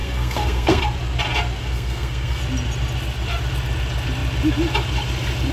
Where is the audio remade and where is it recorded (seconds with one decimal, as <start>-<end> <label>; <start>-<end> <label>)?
0.0-0.8 remade; 0.8-1.6 recorded; 1.6-2.4 remade; 2.4-5.5 recorded